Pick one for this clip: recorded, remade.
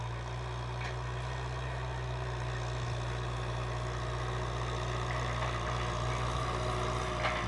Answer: recorded